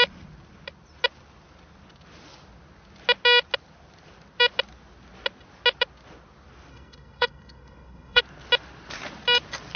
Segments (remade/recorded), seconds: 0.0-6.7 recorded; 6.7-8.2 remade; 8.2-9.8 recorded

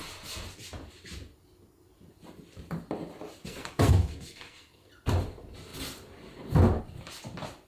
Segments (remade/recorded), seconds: 0.0-3.4 recorded; 3.4-4.9 remade; 4.9-7.7 recorded

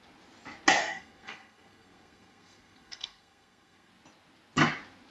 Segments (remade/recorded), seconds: 0.0-0.8 recorded; 0.8-3.9 remade; 3.9-5.1 recorded

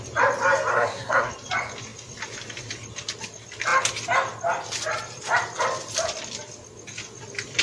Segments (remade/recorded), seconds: 0.0-0.7 recorded; 0.7-1.3 remade; 1.3-7.6 recorded

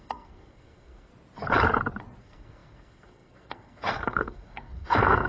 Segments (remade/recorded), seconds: 0.0-1.1 remade; 1.1-2.2 recorded; 2.2-5.3 remade

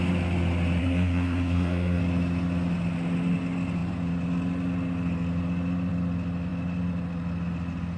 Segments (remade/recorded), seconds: 0.0-0.8 recorded; 0.8-2.0 remade; 2.0-8.0 recorded